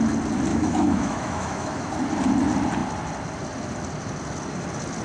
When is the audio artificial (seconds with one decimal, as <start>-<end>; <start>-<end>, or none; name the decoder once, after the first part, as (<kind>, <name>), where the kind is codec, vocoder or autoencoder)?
0.5-1.9 (autoencoder, DAC-VAE)

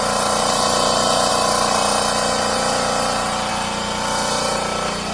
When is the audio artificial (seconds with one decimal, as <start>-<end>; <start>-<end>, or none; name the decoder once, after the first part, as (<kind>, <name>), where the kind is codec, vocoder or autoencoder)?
none

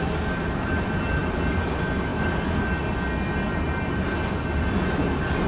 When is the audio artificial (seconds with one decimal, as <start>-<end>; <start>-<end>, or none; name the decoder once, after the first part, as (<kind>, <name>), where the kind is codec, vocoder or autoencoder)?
none

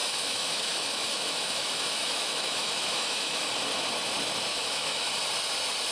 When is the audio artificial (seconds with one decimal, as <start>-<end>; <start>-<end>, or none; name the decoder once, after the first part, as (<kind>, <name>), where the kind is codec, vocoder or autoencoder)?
0.0-3.5 (autoencoder, DAC-VAE); 4.5-5.1

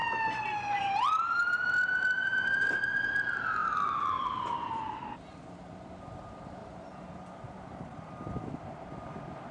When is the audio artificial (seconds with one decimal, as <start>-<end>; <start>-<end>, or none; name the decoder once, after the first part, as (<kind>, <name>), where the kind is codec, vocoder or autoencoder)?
3.6-6.0 (vocoder, BigVGAN v2); 6.6-8.9

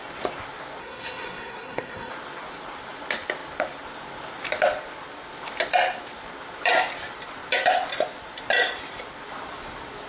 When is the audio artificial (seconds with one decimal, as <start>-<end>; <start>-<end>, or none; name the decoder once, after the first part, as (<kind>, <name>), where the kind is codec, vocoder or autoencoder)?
0.8-2.1 (codec, SNAC)